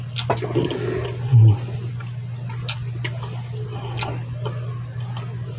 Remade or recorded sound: recorded